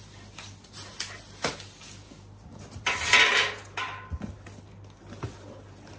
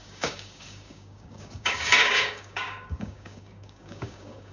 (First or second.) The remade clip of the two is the second